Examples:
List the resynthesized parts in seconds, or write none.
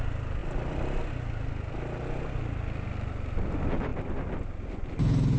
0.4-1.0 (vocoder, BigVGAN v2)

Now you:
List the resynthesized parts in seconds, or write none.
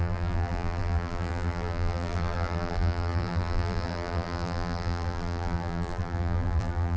0.0-7.0 (vocoder, BigVGAN v2)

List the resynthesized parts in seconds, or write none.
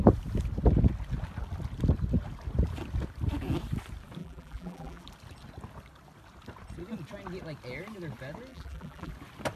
4.2-5.0 (vocoder, BigVGAN v2); 8.5-9.1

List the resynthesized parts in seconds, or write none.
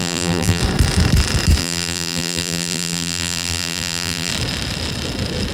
0.0-0.6 (vocoder, BigVGAN v2); 1.6-4.3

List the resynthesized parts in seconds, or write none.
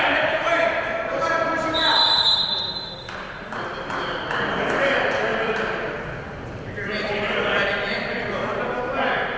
0.0-9.4 (vocoder, BigVGAN v2)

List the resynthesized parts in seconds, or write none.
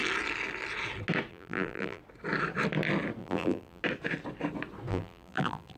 1.3-2.0 (vocoder, BigVGAN v2); 3.2-3.8; 4.9-5.8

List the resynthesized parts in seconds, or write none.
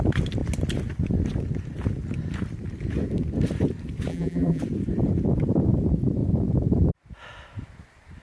4.1-4.6 (vocoder, BigVGAN v2)